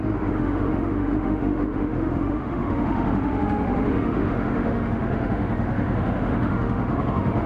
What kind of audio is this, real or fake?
fake